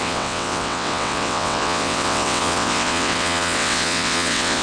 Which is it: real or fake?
fake